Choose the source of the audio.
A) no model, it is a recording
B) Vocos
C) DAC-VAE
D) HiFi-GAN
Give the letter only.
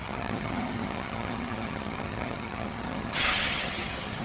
D